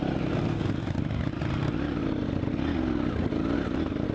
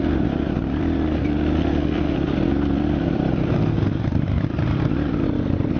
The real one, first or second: first